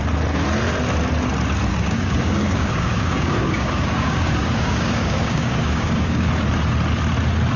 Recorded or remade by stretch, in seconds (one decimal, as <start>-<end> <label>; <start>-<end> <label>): 0.0-1.7 recorded; 1.7-6.3 remade; 6.3-7.6 recorded